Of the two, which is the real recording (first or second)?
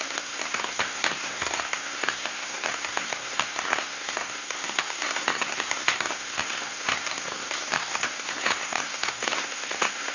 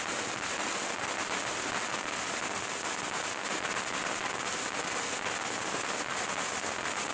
second